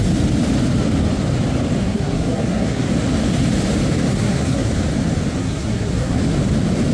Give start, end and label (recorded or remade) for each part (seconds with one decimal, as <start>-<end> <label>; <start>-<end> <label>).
0.0-1.8 recorded; 1.8-2.9 remade; 2.9-4.1 recorded; 4.1-4.7 remade; 4.7-5.4 recorded; 5.4-6.2 remade; 6.2-6.9 recorded